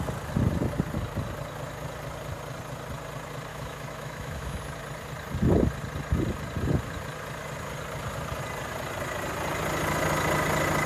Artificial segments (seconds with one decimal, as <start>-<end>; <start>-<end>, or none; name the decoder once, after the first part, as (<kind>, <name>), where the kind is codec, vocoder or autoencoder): 3.5-4.6 (autoencoder, DAC-VAE)